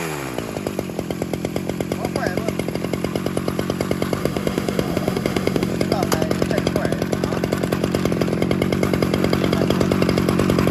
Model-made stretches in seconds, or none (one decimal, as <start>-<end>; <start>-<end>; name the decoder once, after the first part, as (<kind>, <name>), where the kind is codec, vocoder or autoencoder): 4.2-5.7 (autoencoder, DAC-VAE)